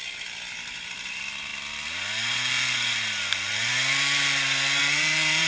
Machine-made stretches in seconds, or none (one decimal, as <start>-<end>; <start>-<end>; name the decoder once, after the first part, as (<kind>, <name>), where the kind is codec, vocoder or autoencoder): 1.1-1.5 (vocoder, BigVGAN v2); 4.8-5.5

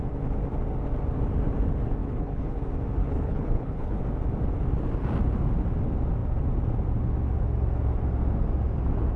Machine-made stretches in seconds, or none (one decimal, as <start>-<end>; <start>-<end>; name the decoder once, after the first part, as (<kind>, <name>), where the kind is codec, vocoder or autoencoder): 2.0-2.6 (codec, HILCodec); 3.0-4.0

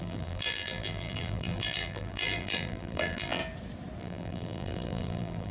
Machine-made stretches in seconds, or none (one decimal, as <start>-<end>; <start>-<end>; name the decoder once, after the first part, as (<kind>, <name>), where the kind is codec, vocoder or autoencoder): 0.0-3.4 (vocoder, BigVGAN v2); 4.0-5.5